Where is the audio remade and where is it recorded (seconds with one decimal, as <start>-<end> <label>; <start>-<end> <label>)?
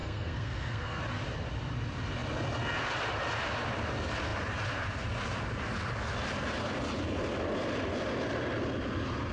0.0-1.0 remade; 1.0-9.3 recorded